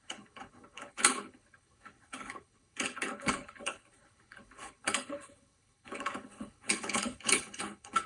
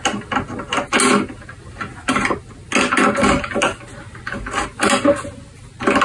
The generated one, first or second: first